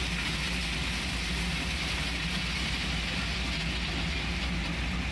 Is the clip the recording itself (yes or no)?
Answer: yes